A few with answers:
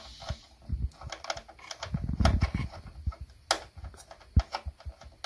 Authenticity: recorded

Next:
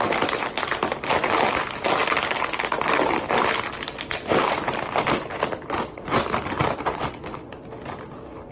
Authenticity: recorded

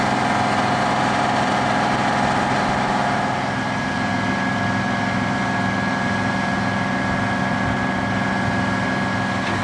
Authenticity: recorded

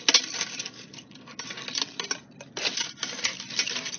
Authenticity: recorded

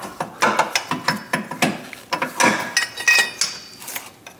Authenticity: recorded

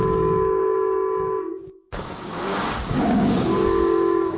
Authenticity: remade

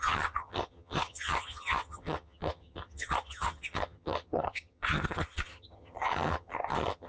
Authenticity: remade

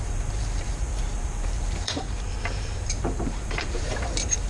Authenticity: remade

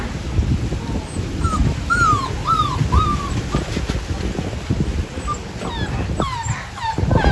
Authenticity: recorded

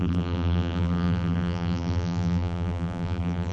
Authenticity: remade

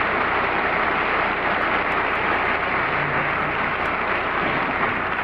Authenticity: recorded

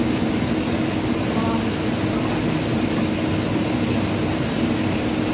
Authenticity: recorded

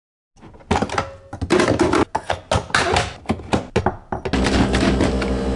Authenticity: recorded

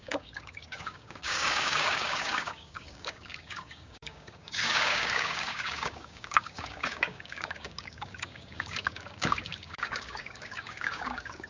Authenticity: remade